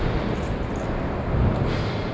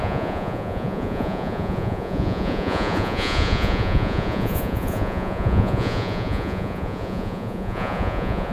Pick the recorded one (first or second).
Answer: first